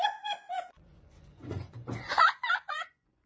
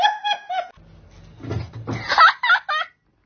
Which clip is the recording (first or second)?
second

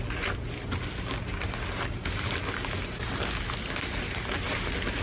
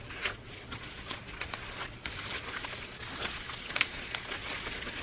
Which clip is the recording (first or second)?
first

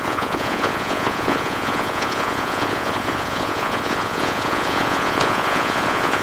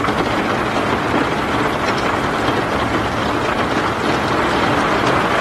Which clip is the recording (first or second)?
second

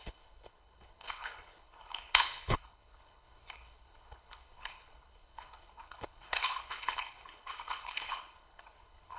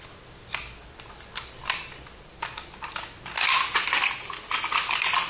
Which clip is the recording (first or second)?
second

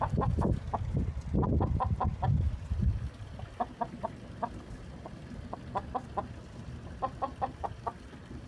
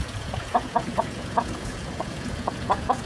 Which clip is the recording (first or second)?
first